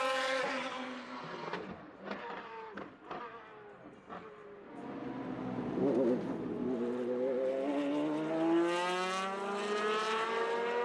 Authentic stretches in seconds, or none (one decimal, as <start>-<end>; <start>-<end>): 0.0-0.6; 3.2-10.8